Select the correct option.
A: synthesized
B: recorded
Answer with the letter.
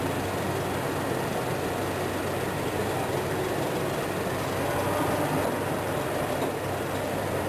B